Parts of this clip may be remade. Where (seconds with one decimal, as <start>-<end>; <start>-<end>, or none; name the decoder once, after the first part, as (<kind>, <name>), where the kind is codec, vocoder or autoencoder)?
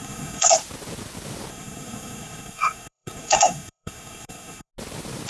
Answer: 0.0-0.5 (codec, SNAC); 1.5-4.7